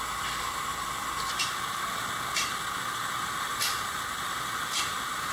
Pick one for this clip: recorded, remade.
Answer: recorded